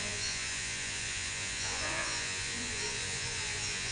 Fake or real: fake